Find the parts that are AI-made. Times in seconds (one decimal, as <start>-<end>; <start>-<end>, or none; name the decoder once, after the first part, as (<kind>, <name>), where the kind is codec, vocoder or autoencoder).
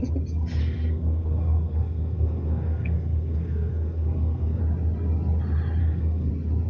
0.6-4.6 (codec, SNAC); 5.8-6.3